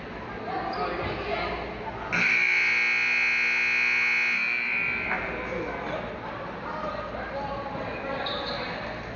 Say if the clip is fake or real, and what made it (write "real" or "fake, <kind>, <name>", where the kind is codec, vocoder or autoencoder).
real